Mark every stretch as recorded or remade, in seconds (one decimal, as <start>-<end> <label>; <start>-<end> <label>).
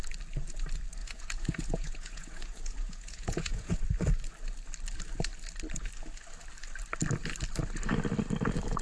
0.0-1.0 recorded; 1.0-3.8 remade; 3.8-8.8 recorded